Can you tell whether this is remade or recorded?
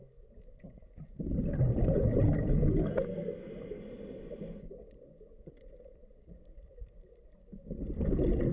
recorded